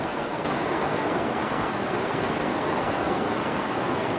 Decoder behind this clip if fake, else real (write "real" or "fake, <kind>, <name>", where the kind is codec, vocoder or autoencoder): fake, codec, SNAC